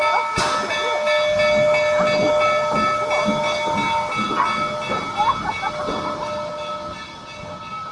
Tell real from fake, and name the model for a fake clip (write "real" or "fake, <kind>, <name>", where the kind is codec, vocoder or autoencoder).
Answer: real